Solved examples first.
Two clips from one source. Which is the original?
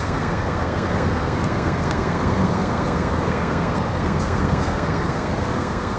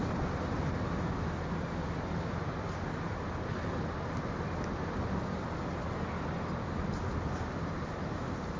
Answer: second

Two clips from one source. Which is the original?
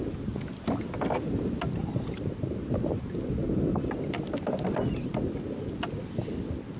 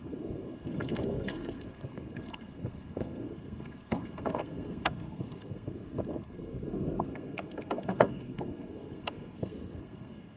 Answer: first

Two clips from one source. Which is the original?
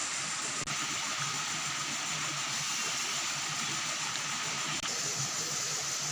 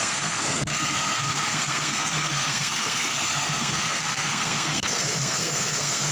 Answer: first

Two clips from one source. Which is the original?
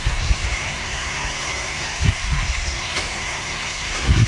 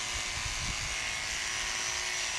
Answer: second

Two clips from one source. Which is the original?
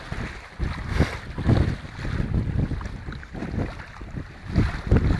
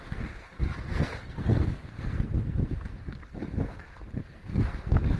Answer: first